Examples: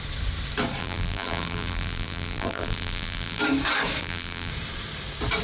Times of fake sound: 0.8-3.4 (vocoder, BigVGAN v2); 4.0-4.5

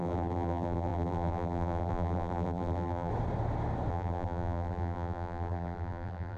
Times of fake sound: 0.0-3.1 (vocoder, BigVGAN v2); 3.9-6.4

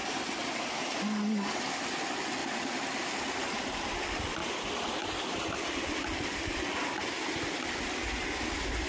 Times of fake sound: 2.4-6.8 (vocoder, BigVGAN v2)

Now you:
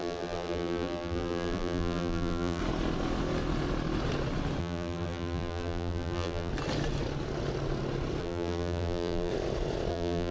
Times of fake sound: 0.0-2.6 (vocoder, BigVGAN v2); 4.6-6.5; 8.2-9.3; 9.9-10.3

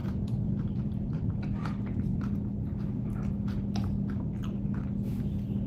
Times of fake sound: 0.0-1.3 (vocoder, BigVGAN v2)